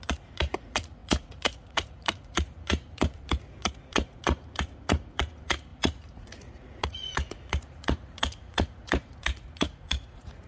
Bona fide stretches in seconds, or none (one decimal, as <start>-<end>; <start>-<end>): none